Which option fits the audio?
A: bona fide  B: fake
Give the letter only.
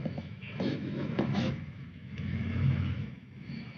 B